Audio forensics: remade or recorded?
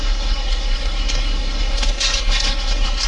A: remade